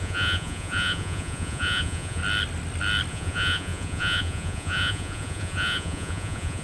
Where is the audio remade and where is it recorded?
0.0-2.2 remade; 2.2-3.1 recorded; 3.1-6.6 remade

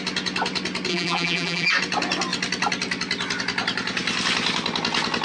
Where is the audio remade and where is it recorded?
0.0-0.9 recorded; 0.9-1.7 remade; 1.7-5.2 recorded

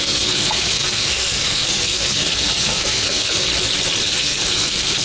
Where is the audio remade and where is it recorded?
0.0-3.5 remade; 3.5-4.0 recorded; 4.0-5.0 remade

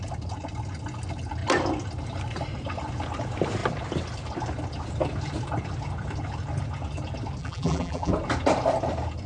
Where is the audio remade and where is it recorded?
0.0-7.4 recorded; 7.4-8.1 remade; 8.1-9.3 recorded

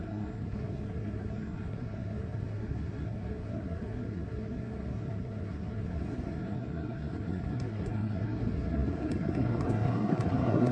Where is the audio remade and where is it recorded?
0.0-10.7 remade

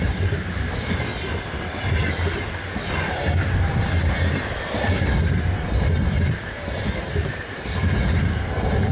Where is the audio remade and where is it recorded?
0.0-1.1 remade; 1.1-6.3 recorded; 6.3-8.9 remade

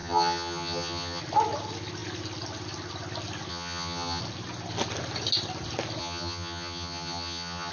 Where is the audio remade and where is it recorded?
0.0-1.2 remade; 1.2-3.5 recorded; 3.5-4.2 remade; 4.2-6.0 recorded; 6.0-7.7 remade